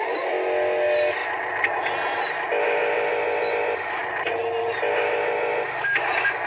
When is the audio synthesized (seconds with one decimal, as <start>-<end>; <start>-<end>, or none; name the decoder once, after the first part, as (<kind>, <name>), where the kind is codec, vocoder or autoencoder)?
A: none